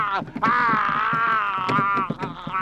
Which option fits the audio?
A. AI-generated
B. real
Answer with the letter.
B